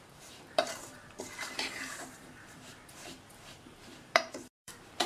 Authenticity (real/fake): fake